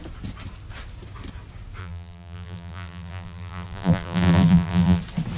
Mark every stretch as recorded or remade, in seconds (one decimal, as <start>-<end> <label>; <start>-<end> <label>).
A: 0.0-1.8 recorded; 1.8-5.0 remade; 5.0-5.4 recorded